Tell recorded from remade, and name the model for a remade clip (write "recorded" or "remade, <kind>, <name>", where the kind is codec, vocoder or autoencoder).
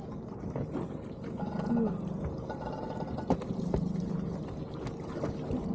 recorded